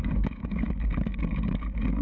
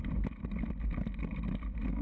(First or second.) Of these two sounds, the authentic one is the second